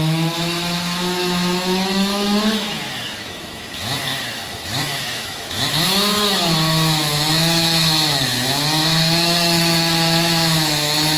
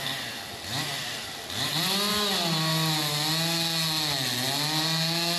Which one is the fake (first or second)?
first